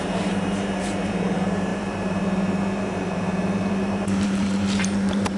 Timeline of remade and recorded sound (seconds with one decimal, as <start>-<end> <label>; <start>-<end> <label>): 0.0-5.4 remade

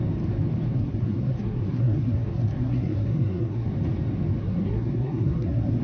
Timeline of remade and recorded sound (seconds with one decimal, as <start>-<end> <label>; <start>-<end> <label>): 0.0-0.8 recorded; 0.8-3.7 remade; 3.7-4.4 recorded; 4.4-5.8 remade